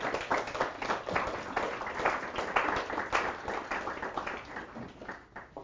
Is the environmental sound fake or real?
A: real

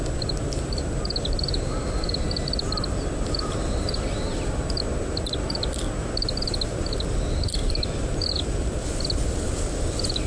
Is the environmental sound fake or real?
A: real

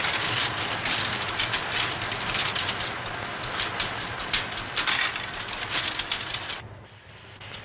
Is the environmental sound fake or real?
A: real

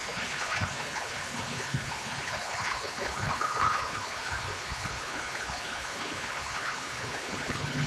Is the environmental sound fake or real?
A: fake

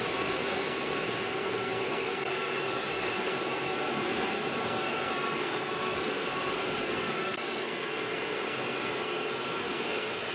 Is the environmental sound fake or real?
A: fake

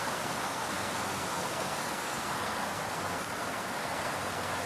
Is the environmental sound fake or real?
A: fake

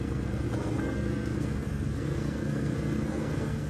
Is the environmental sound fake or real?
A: fake